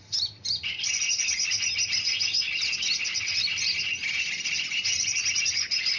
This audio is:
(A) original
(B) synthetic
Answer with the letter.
A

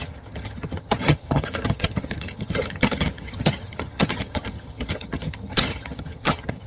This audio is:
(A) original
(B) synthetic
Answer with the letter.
B